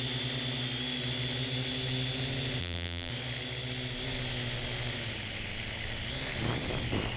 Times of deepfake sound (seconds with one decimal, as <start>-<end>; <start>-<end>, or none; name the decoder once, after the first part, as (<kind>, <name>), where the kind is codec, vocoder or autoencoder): 2.6-3.1 (vocoder, BigVGAN v2)